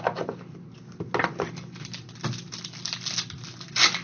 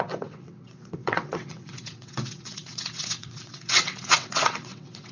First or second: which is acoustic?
first